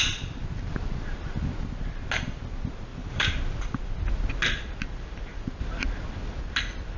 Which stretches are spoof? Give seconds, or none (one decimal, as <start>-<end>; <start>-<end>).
2.9-3.8